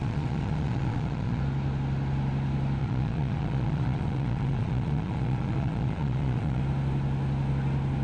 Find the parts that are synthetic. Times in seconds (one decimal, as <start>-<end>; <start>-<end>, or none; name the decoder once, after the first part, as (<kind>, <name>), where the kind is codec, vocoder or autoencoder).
0.0-1.4 (vocoder, Vocos); 2.8-6.6